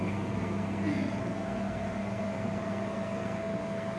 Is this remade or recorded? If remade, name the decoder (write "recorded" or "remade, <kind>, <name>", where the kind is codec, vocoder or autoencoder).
remade, codec, SNAC